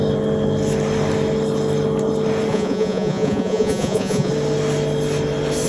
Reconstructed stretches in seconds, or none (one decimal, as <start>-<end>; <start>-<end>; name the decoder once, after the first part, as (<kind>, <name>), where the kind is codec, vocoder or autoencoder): 2.5-4.3 (vocoder, Vocos)